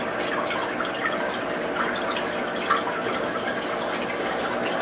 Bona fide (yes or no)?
yes